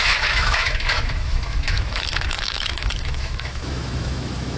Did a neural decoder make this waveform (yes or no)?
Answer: yes